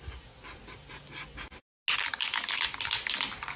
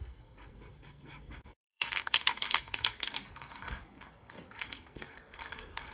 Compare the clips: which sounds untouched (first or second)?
first